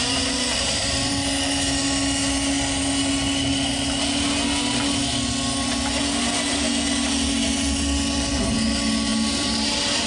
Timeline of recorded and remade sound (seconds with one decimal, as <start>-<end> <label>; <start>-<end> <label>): 0.0-0.5 recorded; 0.5-1.1 remade; 1.1-9.1 recorded; 9.1-10.1 remade